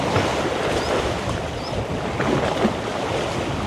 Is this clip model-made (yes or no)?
no